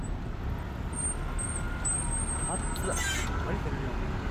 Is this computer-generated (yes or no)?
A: no